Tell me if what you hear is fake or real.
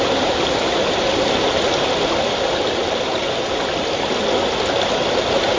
real